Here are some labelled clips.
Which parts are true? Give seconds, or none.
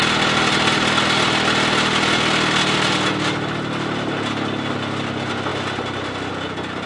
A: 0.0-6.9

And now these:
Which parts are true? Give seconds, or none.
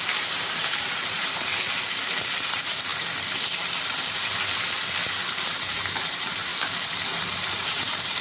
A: 1.5-2.5; 2.9-5.3; 6.5-7.2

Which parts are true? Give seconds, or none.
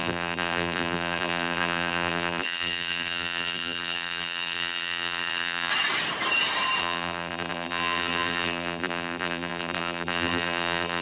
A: 5.7-6.8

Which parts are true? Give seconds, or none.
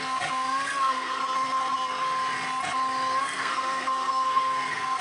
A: 1.2-3.2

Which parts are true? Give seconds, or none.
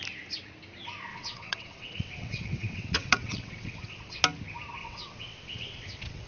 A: 0.0-1.1; 4.2-4.8